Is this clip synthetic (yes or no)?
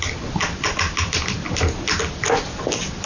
no